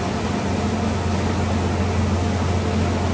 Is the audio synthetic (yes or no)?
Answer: no